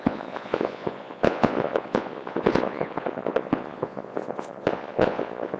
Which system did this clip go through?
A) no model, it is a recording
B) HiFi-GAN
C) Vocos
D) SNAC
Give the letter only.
C